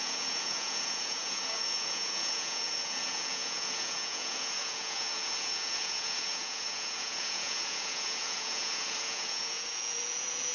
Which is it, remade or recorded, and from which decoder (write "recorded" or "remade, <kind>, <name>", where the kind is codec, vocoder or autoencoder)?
remade, vocoder, Vocos